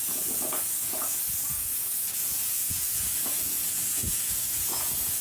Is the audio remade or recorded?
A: remade